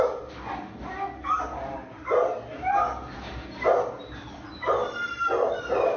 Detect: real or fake real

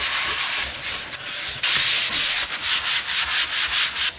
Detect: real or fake real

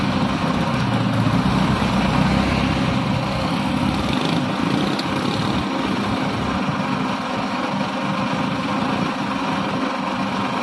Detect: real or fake real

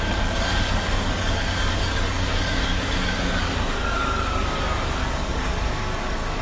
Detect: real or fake fake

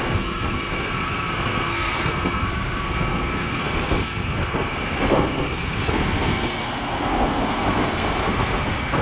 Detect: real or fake fake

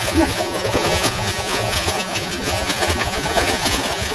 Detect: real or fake fake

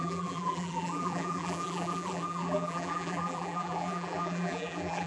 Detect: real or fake fake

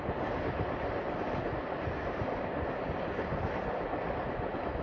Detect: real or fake real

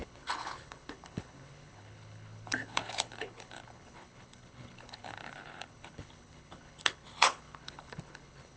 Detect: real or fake fake